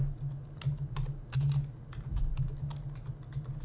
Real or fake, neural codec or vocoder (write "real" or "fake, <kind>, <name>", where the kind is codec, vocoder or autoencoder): real